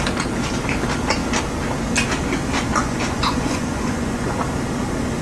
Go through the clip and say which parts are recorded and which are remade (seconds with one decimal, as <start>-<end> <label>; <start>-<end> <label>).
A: 0.0-2.8 recorded; 2.8-4.4 remade; 4.4-5.2 recorded